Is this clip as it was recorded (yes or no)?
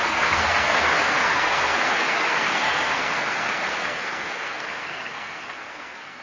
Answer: no